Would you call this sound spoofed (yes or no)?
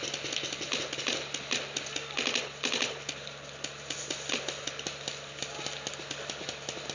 no